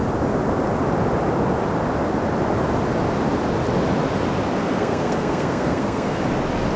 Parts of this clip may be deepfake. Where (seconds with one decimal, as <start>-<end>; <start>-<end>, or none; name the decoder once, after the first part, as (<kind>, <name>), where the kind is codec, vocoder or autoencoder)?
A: 4.6-6.2 (codec, SNAC)